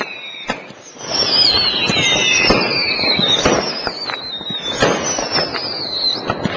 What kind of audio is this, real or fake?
real